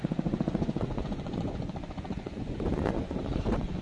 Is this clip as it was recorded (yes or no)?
no